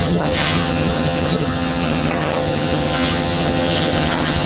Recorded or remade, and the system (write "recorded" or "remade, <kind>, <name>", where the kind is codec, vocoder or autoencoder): remade, vocoder, HiFi-GAN